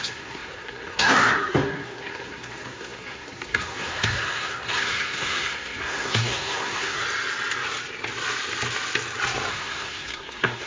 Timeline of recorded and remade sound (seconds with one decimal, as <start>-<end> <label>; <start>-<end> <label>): 0.0-7.0 remade; 7.0-9.5 recorded; 9.5-10.7 remade